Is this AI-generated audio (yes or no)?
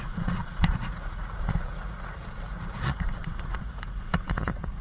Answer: yes